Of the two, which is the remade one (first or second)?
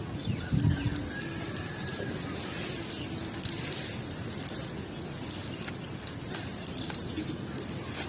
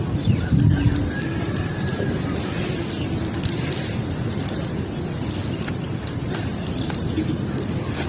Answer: second